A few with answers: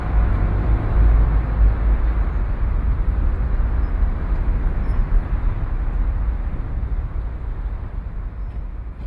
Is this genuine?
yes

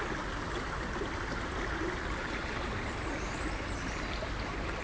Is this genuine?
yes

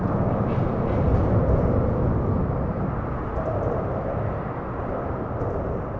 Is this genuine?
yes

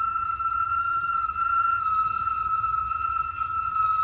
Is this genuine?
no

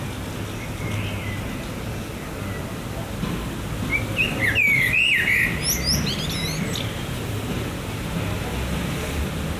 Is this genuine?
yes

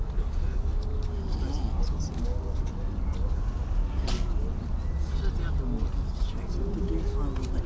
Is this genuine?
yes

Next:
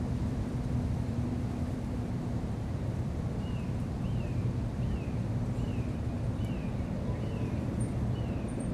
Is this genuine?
no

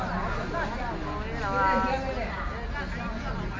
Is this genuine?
yes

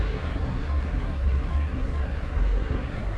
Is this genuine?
no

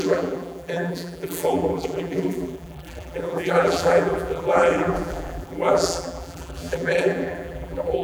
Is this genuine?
no